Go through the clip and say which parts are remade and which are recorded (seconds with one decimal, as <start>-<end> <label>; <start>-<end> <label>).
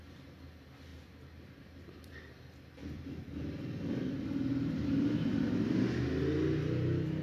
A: 0.0-0.9 recorded; 0.9-2.3 remade; 2.3-4.5 recorded; 4.5-5.8 remade; 5.8-7.2 recorded